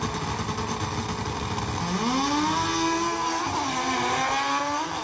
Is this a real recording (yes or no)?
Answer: yes